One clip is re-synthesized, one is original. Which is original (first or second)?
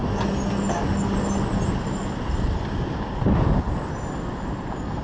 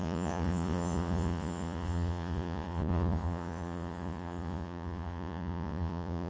first